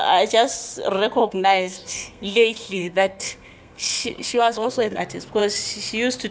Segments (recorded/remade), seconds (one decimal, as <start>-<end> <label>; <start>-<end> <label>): 0.0-1.2 recorded; 1.2-5.0 remade; 5.0-6.3 recorded